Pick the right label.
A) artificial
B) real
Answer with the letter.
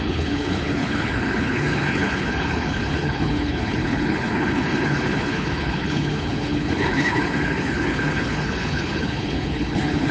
A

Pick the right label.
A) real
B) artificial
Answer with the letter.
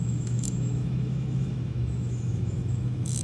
B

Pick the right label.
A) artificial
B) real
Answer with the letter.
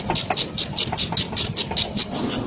B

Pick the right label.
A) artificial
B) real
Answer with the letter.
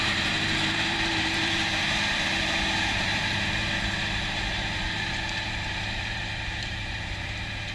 A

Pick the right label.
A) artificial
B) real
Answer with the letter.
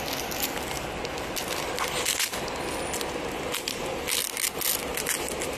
B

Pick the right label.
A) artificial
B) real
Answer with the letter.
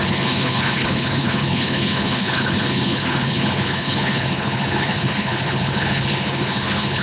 A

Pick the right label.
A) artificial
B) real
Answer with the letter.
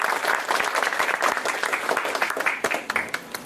B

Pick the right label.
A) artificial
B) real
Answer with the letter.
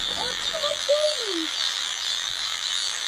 A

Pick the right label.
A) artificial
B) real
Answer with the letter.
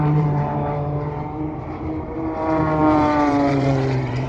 A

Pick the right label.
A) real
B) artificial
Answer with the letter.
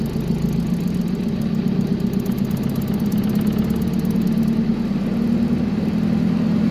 A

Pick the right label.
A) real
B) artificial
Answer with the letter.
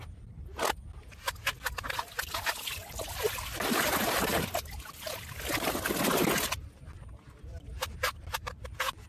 A